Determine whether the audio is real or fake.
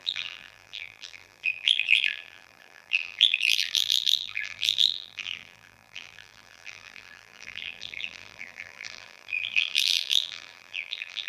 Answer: fake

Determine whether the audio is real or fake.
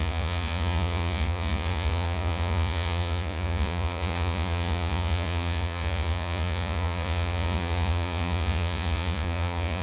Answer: fake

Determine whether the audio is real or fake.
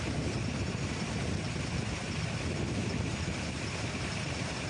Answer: real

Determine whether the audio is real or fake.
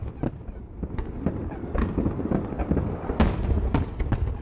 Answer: real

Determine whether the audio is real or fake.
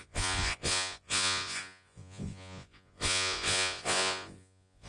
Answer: fake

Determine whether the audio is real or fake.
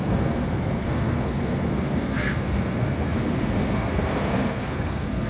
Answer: fake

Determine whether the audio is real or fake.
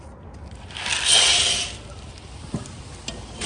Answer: real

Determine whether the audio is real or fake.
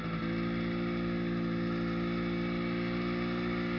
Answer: real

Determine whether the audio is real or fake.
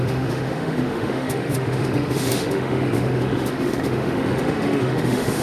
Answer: fake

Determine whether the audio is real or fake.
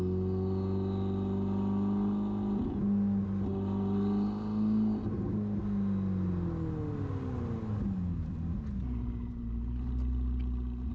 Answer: real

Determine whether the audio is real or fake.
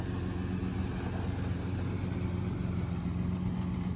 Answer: real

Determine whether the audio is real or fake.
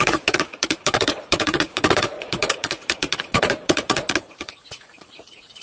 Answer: fake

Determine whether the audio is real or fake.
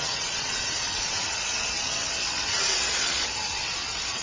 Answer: fake